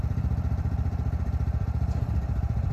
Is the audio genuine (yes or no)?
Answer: no